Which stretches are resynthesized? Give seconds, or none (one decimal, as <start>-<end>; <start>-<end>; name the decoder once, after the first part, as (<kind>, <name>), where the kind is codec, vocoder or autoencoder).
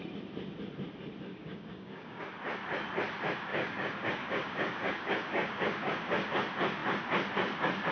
1.3-2.2 (codec, DAC); 3.5-6.3